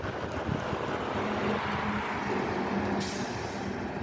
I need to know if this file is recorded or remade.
recorded